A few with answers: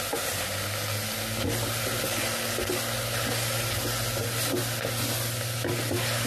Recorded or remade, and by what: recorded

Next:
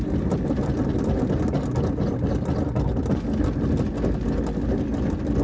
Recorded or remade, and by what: recorded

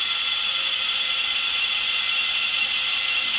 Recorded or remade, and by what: recorded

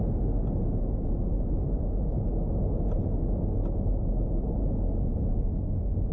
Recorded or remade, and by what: recorded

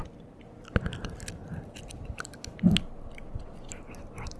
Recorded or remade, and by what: recorded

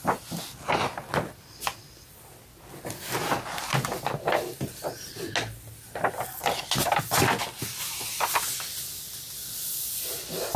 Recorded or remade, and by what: recorded